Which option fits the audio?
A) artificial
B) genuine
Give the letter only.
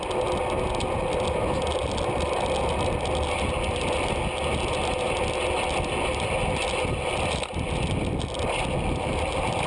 B